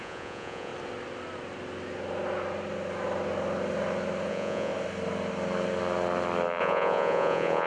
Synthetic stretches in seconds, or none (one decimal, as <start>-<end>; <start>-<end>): 0.0-0.7; 4.3-4.7; 6.6-7.7